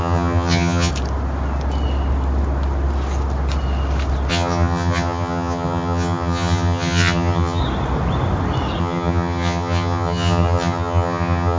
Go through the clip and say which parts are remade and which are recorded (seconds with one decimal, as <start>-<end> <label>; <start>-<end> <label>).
0.0-0.9 remade; 0.9-4.3 recorded; 4.3-7.6 remade; 7.6-8.8 recorded; 8.8-11.6 remade